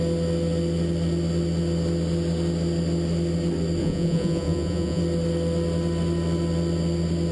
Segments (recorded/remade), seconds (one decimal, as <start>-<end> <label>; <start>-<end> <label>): 0.0-3.8 recorded; 3.8-5.0 remade; 5.0-7.3 recorded